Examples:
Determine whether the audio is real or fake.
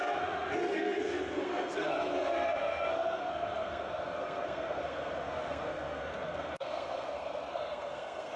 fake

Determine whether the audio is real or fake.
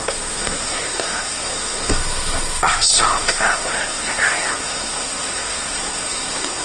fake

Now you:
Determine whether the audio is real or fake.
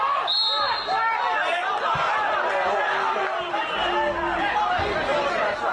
real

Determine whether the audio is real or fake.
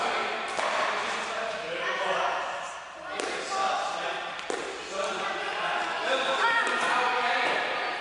real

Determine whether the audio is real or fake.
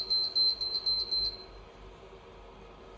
real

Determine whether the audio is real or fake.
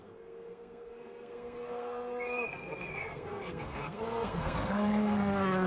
fake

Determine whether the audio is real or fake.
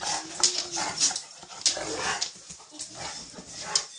real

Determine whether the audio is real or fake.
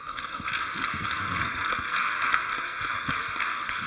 fake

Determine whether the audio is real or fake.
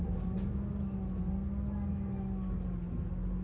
real